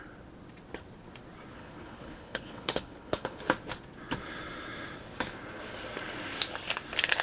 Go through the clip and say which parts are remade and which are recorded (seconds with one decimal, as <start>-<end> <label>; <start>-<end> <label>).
0.0-1.6 recorded; 1.6-3.4 remade; 3.4-7.2 recorded